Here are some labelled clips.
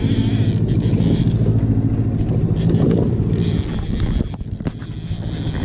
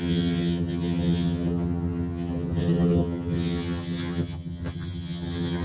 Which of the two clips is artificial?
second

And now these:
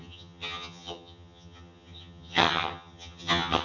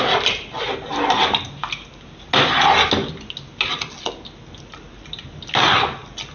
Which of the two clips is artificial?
first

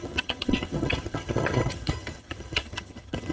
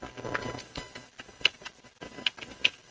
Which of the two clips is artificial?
first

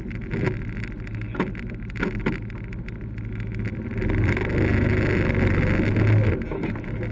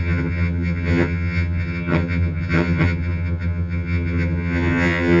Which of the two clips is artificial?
second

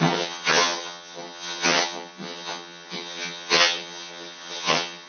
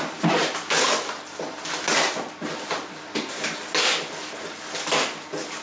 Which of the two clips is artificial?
first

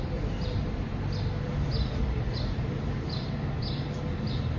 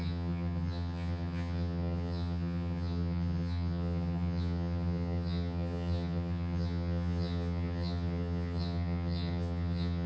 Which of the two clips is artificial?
second